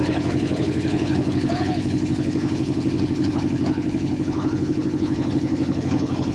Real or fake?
fake